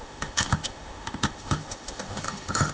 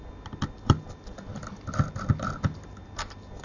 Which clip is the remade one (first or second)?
first